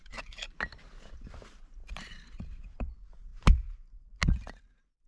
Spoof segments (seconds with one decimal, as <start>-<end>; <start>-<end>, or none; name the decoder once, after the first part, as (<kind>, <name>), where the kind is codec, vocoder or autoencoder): 1.8-2.6 (vocoder, BigVGAN v2)